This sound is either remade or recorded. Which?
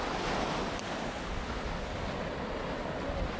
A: recorded